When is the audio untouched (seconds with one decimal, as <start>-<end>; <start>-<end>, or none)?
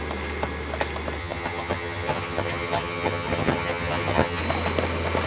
0.0-1.2; 4.4-5.3